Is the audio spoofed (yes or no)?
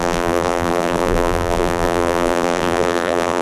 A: yes